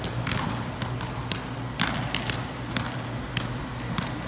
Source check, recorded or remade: recorded